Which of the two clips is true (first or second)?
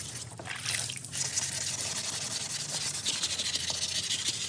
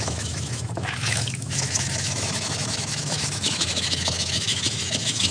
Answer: first